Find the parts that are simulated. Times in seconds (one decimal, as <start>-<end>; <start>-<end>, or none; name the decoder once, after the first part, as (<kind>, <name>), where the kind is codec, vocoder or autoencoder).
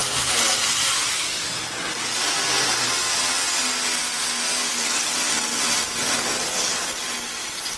none